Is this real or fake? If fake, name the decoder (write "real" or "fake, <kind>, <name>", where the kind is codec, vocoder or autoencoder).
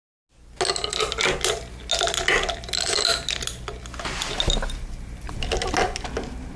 real